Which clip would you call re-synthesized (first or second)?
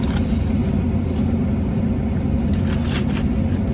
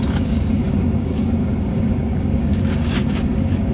second